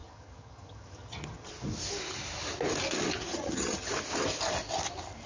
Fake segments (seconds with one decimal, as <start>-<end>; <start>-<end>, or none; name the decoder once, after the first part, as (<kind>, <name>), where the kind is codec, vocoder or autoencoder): 0.0-1.5 (vocoder, HiFi-GAN); 3.3-3.9